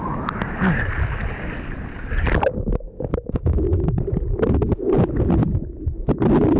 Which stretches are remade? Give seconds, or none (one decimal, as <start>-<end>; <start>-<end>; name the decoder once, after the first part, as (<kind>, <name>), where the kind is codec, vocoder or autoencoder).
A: 3.1-3.9 (codec, DAC)